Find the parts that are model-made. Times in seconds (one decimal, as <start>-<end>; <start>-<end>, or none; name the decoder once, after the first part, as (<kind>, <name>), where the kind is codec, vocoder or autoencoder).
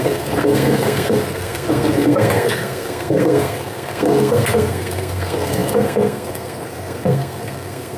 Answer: 0.0-8.0 (codec, SNAC)